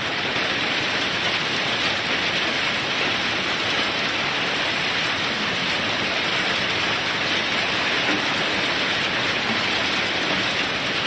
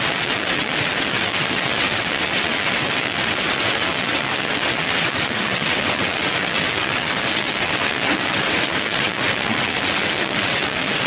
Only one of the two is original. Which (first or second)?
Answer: first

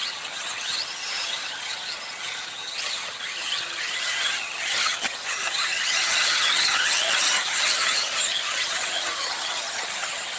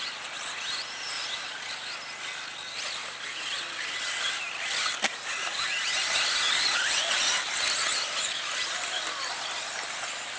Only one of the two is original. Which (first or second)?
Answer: second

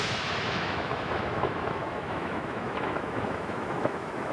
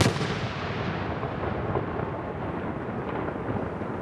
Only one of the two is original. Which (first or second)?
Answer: second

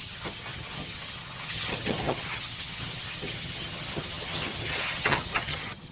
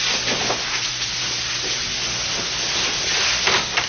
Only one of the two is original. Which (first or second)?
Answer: second